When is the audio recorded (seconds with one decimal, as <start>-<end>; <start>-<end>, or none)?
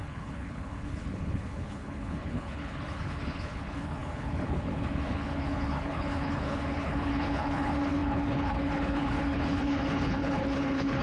none